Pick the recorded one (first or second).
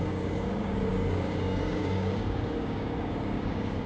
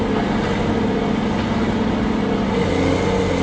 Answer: second